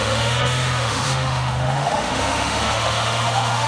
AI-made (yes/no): yes